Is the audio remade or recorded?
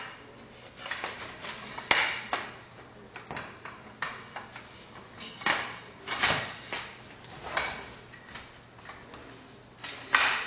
recorded